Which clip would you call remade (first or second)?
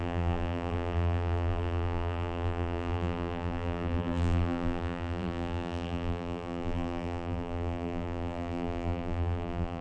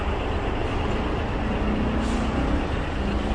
first